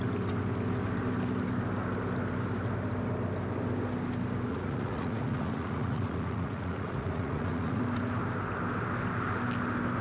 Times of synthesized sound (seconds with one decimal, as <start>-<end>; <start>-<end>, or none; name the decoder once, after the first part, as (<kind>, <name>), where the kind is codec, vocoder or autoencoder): 4.5-7.8 (vocoder, Vocos)